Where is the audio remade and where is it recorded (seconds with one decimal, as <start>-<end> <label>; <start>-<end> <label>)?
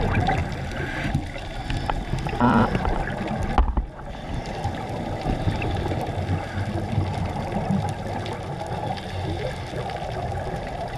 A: 0.0-11.0 recorded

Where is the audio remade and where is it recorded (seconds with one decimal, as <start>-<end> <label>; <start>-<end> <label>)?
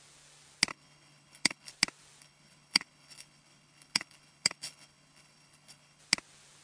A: 0.0-0.7 recorded; 0.7-1.7 remade; 1.7-2.2 recorded; 2.2-6.0 remade; 6.0-6.6 recorded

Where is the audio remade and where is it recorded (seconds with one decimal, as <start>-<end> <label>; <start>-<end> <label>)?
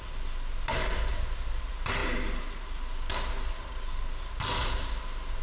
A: 0.0-5.4 recorded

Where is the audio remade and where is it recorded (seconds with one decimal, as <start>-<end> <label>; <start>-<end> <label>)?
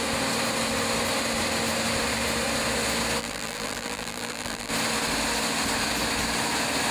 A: 0.0-3.2 recorded; 3.2-4.7 remade; 4.7-6.9 recorded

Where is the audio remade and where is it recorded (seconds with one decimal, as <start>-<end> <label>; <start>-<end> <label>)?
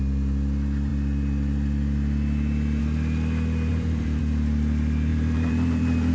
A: 0.0-3.7 recorded; 3.7-4.2 remade; 4.2-5.1 recorded; 5.1-6.1 remade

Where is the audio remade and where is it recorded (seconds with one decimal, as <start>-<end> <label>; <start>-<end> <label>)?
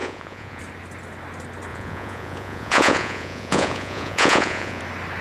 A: 0.0-0.6 remade; 0.6-1.7 recorded; 1.7-4.8 remade; 4.8-5.2 recorded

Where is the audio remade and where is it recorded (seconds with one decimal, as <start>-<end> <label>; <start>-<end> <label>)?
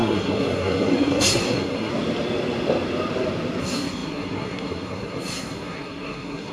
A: 0.0-1.9 remade; 1.9-3.6 recorded; 3.6-6.5 remade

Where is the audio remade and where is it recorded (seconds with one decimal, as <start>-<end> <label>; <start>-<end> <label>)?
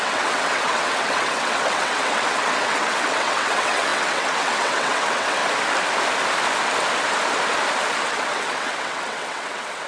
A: 0.0-5.4 remade; 5.4-8.1 recorded; 8.1-9.9 remade